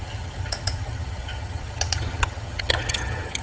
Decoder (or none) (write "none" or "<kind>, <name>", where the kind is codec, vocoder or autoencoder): vocoder, HiFi-GAN